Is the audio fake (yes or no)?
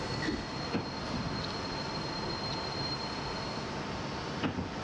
no